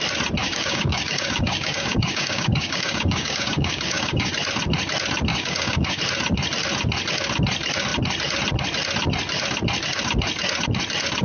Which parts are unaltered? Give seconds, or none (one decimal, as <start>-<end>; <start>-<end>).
0.0-0.4; 4.3-5.3; 6.0-11.2